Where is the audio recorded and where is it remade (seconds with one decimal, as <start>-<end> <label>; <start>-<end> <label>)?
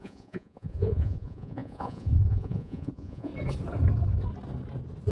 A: 0.0-3.3 remade; 3.3-5.1 recorded